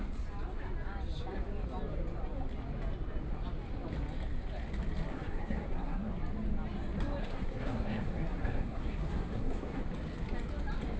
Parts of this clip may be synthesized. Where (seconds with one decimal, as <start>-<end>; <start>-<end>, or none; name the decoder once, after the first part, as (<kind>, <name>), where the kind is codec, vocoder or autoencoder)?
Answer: 5.1-6.2 (codec, SNAC); 7.2-9.8